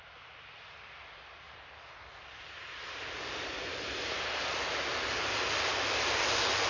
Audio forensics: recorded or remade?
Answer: recorded